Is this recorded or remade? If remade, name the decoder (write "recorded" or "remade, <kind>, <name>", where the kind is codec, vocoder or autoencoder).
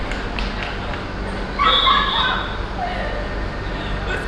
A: recorded